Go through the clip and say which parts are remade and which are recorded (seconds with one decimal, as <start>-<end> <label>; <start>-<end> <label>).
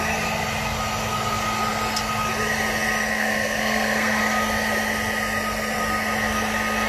0.0-3.1 recorded; 3.1-4.2 remade; 4.2-6.9 recorded